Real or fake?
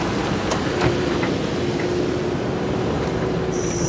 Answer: fake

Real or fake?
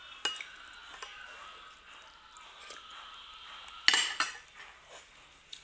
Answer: real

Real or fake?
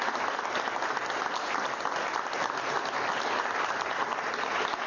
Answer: real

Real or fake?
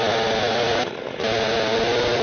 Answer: real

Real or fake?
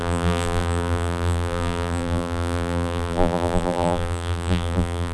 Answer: fake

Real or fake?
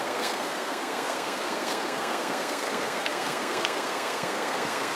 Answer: fake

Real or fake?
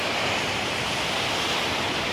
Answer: real